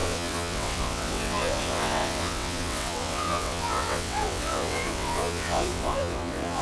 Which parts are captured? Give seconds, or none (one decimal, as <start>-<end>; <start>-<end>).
none